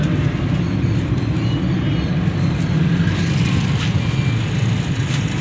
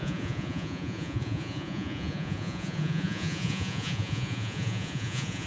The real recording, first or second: first